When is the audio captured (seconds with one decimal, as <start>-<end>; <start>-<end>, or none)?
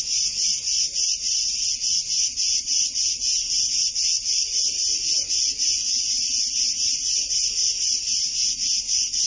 none